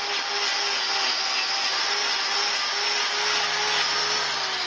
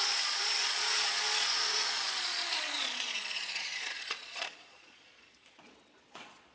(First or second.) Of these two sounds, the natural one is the first